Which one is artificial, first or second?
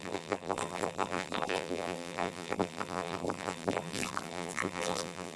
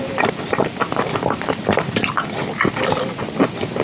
first